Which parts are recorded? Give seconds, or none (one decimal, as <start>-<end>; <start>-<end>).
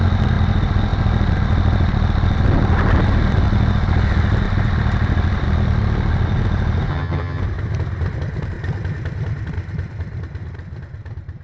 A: 0.0-6.9; 7.4-11.4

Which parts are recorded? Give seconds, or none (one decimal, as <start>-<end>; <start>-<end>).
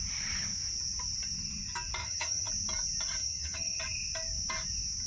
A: 0.0-2.0; 2.5-3.2; 3.8-5.1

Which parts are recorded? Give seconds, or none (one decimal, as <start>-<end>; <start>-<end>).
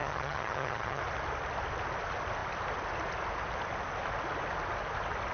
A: 1.0-5.3